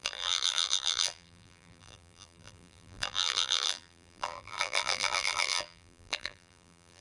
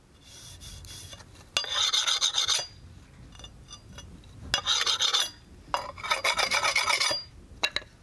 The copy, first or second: first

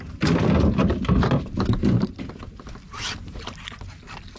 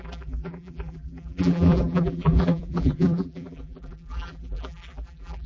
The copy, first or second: second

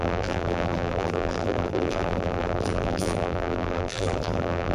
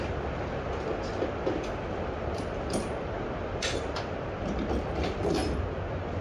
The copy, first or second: first